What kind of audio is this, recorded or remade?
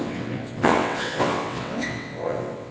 remade